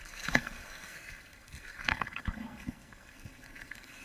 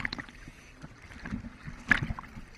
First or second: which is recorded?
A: second